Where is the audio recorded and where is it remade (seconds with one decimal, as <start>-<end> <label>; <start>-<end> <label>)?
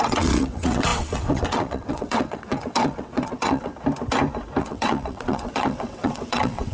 0.0-3.7 remade; 3.7-4.6 recorded; 4.6-6.7 remade